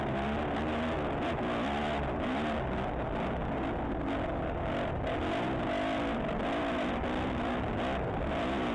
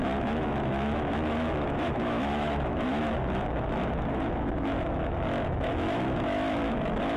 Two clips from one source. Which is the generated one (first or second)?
second